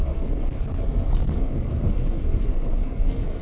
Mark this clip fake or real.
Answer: fake